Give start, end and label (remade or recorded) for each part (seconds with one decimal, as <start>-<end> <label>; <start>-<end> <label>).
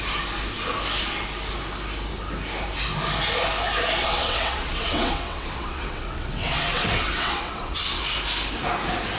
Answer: 0.0-4.0 recorded; 4.0-8.0 remade; 8.0-9.2 recorded